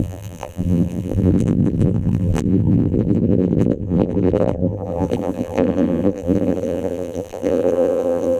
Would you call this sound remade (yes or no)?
yes